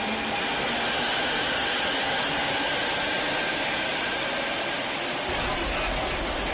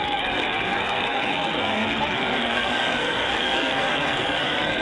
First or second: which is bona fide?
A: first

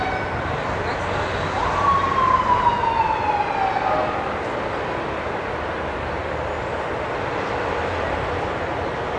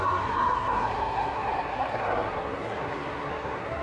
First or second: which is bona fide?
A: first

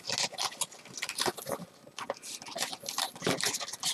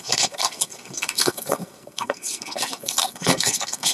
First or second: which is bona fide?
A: first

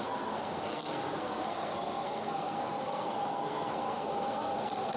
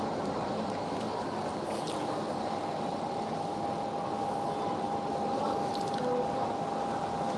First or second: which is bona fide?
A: second